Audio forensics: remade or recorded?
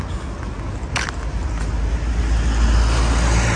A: recorded